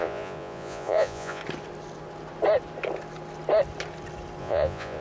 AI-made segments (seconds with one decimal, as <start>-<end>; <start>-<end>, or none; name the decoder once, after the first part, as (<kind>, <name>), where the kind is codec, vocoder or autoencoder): 0.0-1.4 (vocoder, Vocos); 4.4-5.0